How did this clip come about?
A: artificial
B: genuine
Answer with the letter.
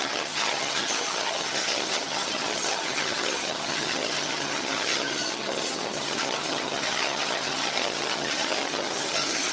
A